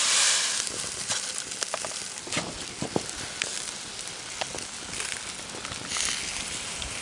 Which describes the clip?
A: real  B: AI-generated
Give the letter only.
A